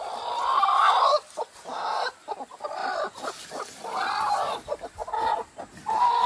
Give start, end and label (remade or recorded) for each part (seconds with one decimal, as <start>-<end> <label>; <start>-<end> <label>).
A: 0.0-2.8 recorded; 2.8-4.3 remade; 4.3-5.0 recorded; 5.0-5.6 remade; 5.6-6.3 recorded